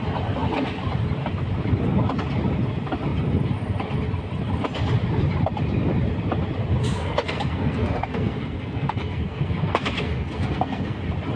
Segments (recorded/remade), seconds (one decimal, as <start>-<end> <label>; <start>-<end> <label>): 0.0-6.9 recorded; 6.9-11.0 remade; 11.0-11.4 recorded

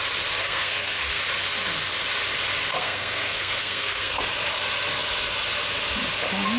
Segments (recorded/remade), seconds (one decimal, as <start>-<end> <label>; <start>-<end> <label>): 0.0-0.4 recorded; 0.4-1.2 remade; 1.2-2.7 recorded; 2.7-4.2 remade; 4.2-6.6 recorded

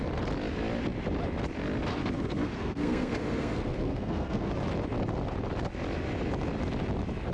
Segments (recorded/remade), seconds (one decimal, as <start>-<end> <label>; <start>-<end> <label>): 0.0-2.0 recorded; 2.0-4.5 remade; 4.5-7.3 recorded

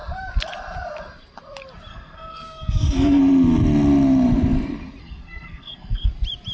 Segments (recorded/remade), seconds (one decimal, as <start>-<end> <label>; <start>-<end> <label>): 0.0-1.9 recorded; 1.9-3.2 remade; 3.2-5.0 recorded; 5.0-6.1 remade; 6.1-6.5 recorded

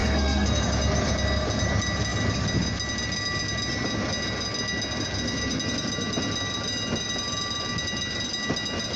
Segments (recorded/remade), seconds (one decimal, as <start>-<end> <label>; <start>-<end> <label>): 0.0-0.6 remade; 0.6-9.0 recorded

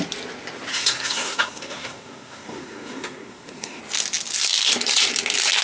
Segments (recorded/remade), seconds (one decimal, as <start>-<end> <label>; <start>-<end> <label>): 0.0-0.7 recorded; 0.7-3.8 remade; 3.8-5.6 recorded

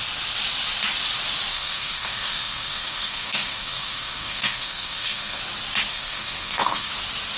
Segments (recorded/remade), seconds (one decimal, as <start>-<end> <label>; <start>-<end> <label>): 0.0-1.5 recorded; 1.5-5.4 remade; 5.4-5.9 recorded; 5.9-6.9 remade; 6.9-7.4 recorded